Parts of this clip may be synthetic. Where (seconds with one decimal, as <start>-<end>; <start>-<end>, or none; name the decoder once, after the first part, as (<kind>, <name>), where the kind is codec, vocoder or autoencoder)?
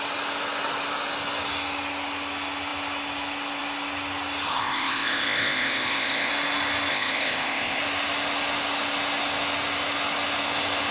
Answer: 4.5-6.3 (codec, ZipCodec); 6.9-7.8